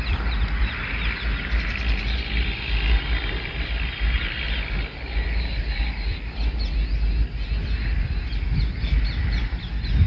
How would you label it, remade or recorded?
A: recorded